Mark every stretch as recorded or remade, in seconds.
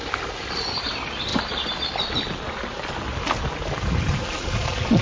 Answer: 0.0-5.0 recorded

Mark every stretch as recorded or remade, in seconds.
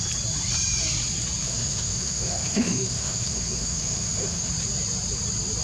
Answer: 0.0-1.4 recorded; 1.4-4.5 remade; 4.5-5.6 recorded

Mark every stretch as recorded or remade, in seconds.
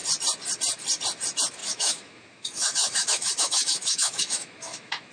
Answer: 0.0-1.6 recorded; 1.6-5.1 remade